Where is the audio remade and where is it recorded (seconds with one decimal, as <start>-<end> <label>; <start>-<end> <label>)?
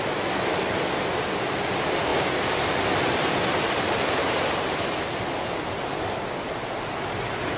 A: 0.0-7.6 recorded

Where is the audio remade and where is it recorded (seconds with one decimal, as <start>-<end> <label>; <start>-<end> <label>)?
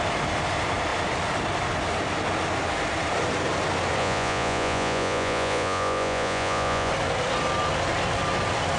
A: 0.0-4.0 recorded; 4.0-6.9 remade; 6.9-8.8 recorded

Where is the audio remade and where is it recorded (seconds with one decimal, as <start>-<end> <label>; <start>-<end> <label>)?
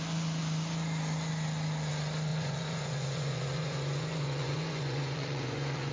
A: 0.0-2.3 recorded; 2.3-5.9 remade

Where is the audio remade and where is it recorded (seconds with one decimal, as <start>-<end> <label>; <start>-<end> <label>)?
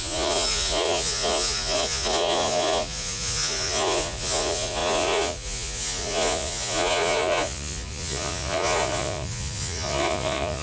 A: 0.0-10.6 remade